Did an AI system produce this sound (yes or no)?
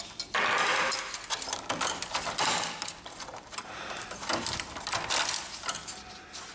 no